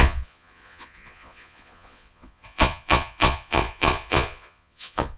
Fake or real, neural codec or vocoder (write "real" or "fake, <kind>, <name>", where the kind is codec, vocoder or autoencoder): fake, vocoder, Vocos